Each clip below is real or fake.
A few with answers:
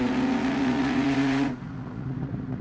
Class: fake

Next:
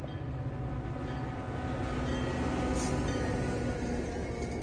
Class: real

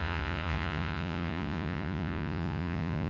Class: fake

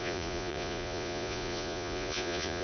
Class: fake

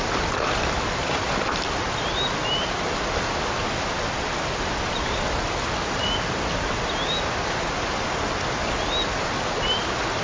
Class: real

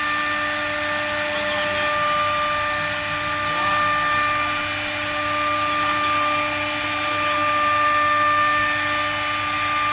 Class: real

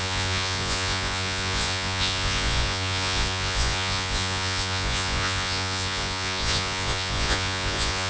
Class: fake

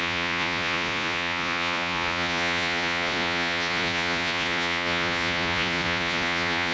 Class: fake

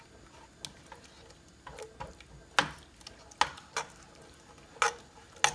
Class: real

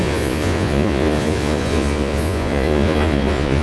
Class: fake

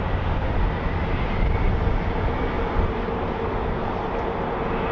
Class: real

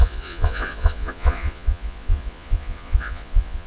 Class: fake